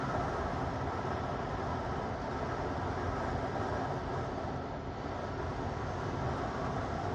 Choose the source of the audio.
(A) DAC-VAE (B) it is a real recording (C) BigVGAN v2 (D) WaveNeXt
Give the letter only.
B